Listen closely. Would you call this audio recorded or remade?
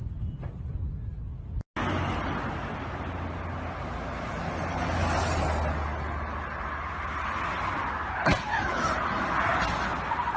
recorded